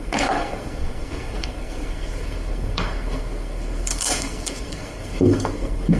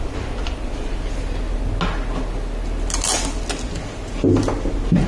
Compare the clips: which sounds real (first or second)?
second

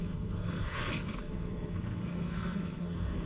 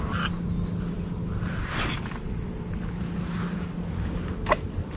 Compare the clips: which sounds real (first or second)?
second